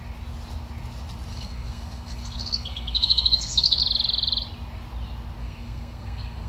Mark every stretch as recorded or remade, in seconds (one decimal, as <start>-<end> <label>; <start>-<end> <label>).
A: 0.0-1.3 recorded; 1.3-3.8 remade; 3.8-5.4 recorded; 5.4-6.5 remade